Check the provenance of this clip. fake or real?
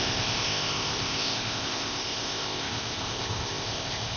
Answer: fake